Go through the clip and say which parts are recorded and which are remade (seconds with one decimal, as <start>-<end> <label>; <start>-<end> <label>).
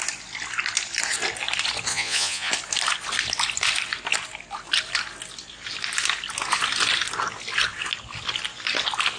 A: 0.0-1.9 recorded; 1.9-2.5 remade; 2.5-9.2 recorded